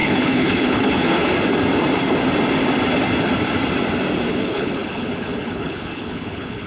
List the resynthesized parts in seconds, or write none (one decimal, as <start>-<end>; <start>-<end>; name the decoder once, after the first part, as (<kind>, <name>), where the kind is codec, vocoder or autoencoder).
0.0-1.3 (codec, HILCodec); 4.3-6.7